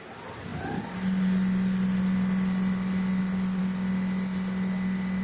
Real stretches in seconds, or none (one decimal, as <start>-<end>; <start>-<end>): 0.0-5.2